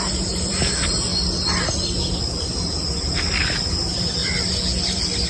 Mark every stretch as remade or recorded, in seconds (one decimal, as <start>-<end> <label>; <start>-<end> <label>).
0.0-1.1 remade; 1.1-3.7 recorded; 3.7-4.2 remade; 4.2-5.3 recorded